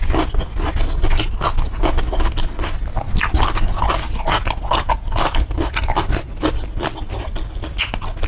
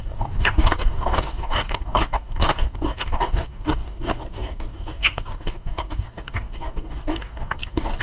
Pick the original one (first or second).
first